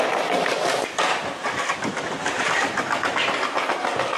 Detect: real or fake real